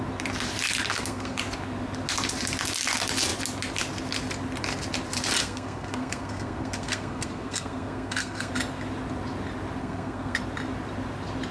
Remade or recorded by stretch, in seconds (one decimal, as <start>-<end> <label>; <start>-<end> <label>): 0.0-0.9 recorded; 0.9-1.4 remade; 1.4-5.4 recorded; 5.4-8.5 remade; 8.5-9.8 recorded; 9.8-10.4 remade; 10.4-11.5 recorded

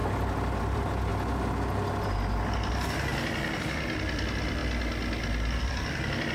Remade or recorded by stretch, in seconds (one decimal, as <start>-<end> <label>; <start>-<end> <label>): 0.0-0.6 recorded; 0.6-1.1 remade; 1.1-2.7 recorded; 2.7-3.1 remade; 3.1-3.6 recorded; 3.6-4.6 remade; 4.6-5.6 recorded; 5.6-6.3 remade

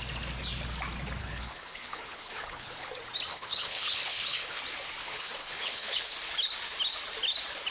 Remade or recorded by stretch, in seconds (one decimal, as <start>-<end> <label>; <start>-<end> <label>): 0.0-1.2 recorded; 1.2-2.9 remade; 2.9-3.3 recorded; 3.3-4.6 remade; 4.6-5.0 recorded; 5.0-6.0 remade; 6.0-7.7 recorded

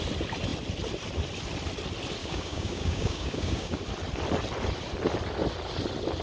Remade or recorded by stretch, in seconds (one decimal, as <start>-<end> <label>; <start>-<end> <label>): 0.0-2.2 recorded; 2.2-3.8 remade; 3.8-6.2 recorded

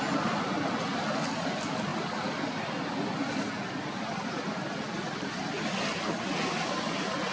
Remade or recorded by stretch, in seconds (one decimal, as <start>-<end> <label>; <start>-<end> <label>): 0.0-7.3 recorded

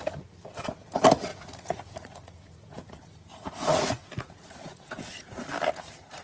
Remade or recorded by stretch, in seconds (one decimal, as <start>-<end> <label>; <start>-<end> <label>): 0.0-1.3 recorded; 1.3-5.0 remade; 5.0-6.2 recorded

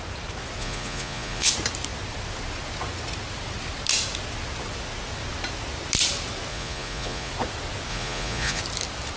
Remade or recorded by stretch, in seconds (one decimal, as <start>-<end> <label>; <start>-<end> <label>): 0.0-0.6 recorded; 0.6-1.5 remade; 1.5-6.5 recorded; 6.5-7.3 remade; 7.3-7.9 recorded; 7.9-8.6 remade; 8.6-9.2 recorded

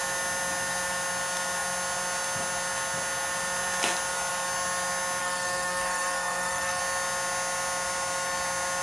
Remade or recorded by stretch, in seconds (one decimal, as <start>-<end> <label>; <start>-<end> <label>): 0.0-5.2 recorded; 5.2-6.8 remade; 6.8-8.8 recorded